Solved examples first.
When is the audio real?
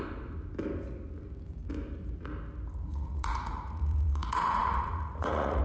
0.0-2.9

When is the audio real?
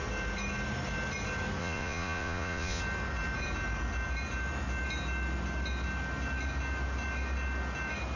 0.0-1.6; 2.8-8.2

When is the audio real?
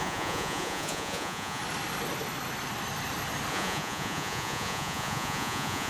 1.6-3.5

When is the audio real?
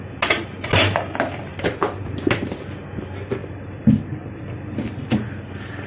0.0-5.9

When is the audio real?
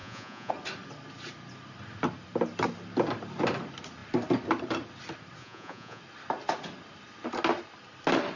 0.5-5.4; 6.0-8.4